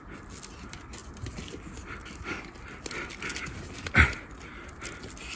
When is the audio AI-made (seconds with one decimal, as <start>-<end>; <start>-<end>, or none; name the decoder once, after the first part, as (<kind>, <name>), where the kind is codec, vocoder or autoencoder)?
none